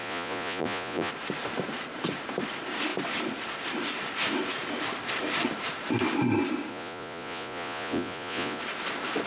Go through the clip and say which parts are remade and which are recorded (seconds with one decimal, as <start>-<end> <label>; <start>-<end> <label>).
0.0-1.1 remade; 1.1-6.7 recorded; 6.7-8.6 remade; 8.6-9.3 recorded